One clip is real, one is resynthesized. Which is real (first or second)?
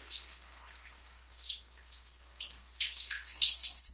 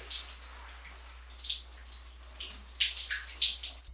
second